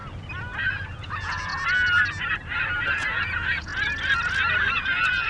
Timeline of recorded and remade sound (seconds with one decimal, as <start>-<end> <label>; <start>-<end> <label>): 0.0-0.6 recorded; 0.6-1.5 remade; 1.5-2.9 recorded; 2.9-3.7 remade; 3.7-4.7 recorded; 4.7-5.3 remade